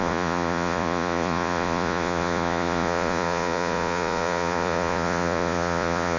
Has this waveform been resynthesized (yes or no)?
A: yes